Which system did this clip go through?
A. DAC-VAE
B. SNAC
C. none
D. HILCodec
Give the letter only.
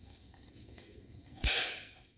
B